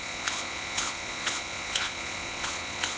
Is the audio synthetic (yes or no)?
yes